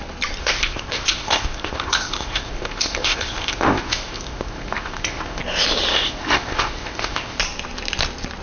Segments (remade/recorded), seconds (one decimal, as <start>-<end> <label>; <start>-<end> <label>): 0.0-0.4 recorded; 0.4-5.4 remade; 5.4-5.9 recorded; 5.9-7.4 remade; 7.4-8.4 recorded